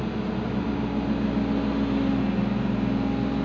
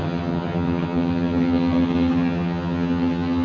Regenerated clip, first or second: second